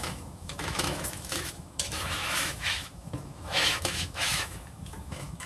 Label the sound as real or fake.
fake